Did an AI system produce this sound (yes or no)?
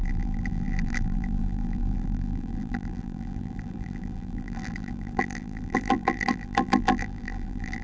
yes